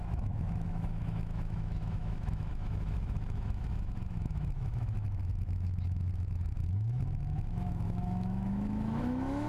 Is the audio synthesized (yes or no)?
yes